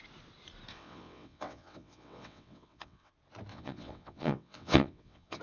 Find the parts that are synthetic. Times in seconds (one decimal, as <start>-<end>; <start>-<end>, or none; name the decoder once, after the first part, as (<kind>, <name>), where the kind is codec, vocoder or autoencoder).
0.7-3.1 (vocoder, WaveNeXt); 3.5-5.4